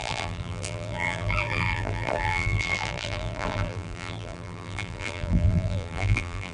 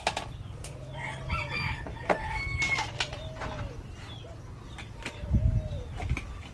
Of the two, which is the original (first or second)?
second